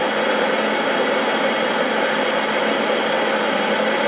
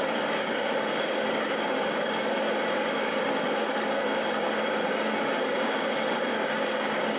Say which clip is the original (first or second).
first